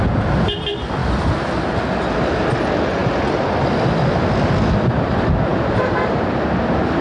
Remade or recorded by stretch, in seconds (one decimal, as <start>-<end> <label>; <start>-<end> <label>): 0.0-5.5 recorded; 5.5-6.0 remade; 6.0-7.0 recorded